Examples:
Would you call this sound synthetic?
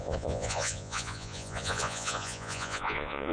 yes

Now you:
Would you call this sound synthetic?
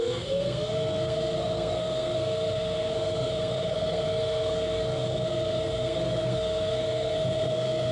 yes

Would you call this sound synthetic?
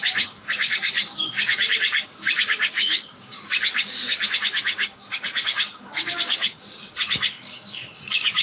yes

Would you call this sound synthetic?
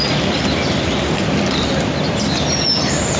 no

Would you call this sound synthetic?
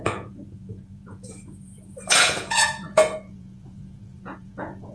yes